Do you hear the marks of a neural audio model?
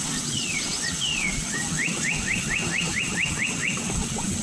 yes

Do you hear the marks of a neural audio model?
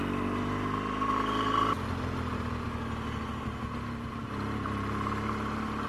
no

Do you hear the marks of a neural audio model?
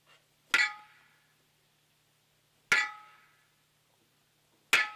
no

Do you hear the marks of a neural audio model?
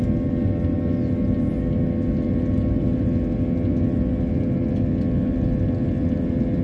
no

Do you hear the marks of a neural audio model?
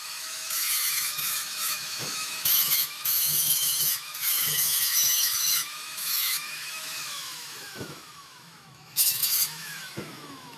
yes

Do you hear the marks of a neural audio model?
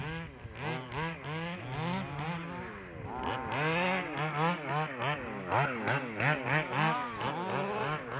no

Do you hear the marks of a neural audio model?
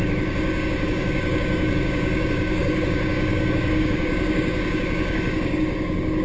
yes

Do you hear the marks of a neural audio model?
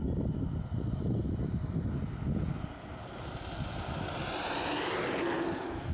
no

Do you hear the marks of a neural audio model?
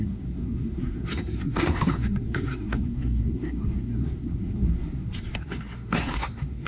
yes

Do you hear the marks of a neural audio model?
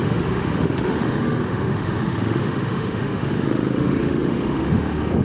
yes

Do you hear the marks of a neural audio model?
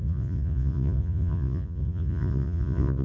yes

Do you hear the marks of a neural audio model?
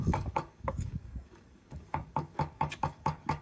yes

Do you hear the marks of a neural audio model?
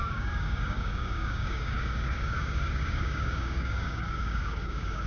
yes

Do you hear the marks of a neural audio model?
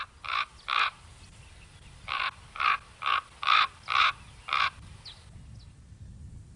no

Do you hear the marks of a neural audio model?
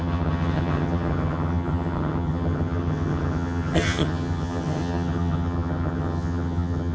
yes